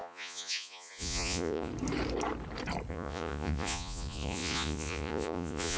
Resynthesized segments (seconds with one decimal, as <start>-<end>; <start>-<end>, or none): 0.0-1.7; 2.9-5.8